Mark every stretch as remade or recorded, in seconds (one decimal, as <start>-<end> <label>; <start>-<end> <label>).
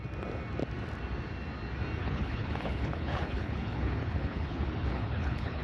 0.0-2.0 recorded; 2.0-5.6 remade